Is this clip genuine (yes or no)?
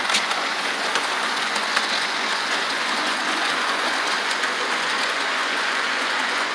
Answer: no